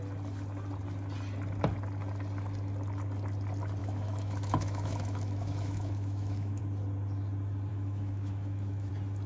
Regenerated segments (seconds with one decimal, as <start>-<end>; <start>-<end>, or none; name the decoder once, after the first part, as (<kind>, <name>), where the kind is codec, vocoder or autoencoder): 3.8-6.6 (autoencoder, DAC-VAE); 7.7-8.9

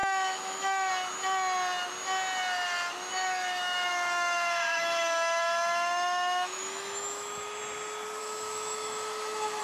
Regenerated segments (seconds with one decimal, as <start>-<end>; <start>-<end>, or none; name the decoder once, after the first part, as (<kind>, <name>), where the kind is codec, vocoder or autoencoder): 0.0-0.9 (autoencoder, DAC-VAE); 3.1-7.6; 8.2-9.6